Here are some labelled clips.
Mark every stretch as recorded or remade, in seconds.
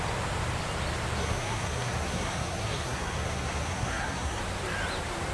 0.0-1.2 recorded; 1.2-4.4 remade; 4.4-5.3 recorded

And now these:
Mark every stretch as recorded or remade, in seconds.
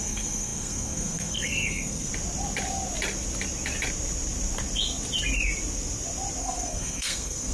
0.0-2.1 remade; 2.1-6.4 recorded; 6.4-7.5 remade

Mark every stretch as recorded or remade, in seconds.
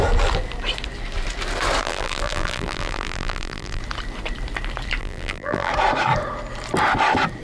0.0-1.8 recorded; 1.8-3.8 remade; 3.8-5.0 recorded; 5.0-5.7 remade; 5.7-7.4 recorded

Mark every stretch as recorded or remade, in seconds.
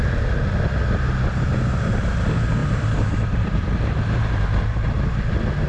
0.0-2.6 recorded; 2.6-4.8 remade; 4.8-5.7 recorded